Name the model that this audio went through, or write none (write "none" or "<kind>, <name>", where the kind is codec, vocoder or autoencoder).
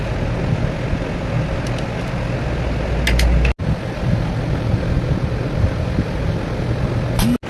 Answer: none